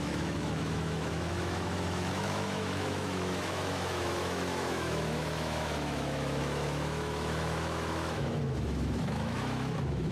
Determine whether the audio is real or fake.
fake